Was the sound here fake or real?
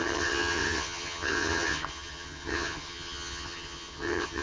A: fake